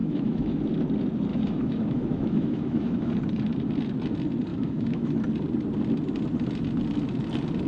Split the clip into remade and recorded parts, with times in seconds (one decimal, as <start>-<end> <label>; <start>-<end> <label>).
0.0-0.6 remade; 0.6-1.3 recorded; 1.3-3.1 remade; 3.1-4.5 recorded; 4.5-5.2 remade; 5.2-7.7 recorded